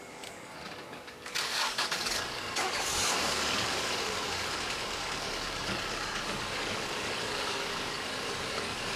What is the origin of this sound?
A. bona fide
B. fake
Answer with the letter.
B